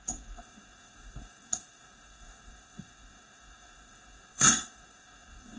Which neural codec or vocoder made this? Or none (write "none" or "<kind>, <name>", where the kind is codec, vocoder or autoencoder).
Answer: codec, DAC